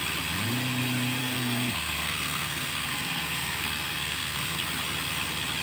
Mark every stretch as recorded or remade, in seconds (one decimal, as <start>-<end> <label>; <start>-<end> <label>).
0.0-1.2 recorded; 1.2-4.6 remade; 4.6-5.6 recorded